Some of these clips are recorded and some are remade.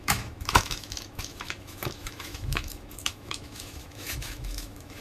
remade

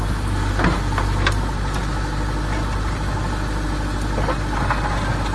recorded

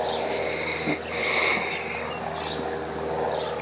recorded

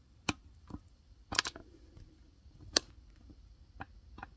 recorded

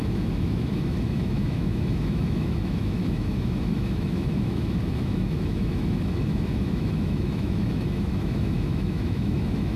remade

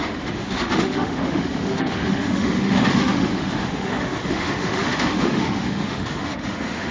remade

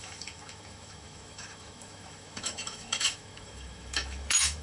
remade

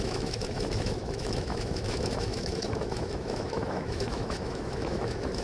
remade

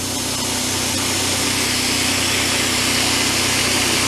recorded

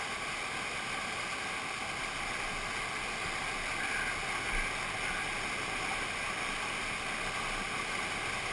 recorded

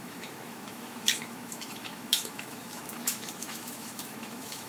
remade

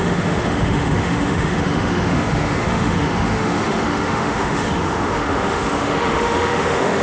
remade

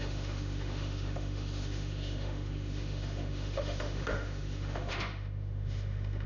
remade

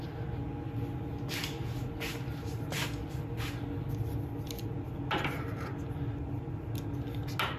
recorded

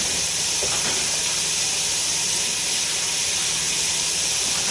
recorded